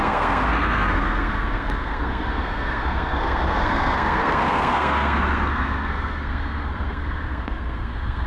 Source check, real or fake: fake